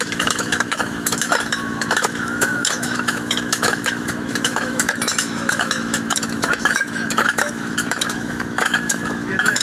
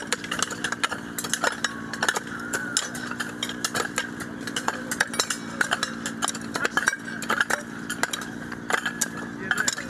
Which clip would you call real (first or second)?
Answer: second